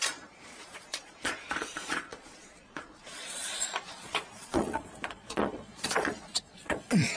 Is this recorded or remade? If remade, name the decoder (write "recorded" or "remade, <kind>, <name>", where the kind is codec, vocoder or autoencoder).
remade, vocoder, Vocos